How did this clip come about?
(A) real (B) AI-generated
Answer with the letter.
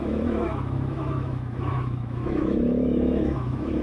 B